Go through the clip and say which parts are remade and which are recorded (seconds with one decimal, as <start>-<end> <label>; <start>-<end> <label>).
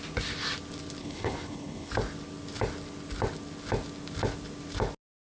0.0-1.0 recorded; 1.0-1.9 remade; 1.9-5.2 recorded